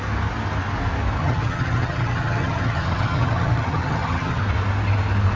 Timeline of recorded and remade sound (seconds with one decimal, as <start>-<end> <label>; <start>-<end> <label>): 0.0-1.2 recorded; 1.2-4.4 remade; 4.4-5.4 recorded